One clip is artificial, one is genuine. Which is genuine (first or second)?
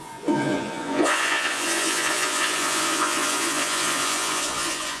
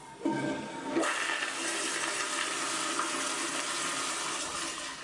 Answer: second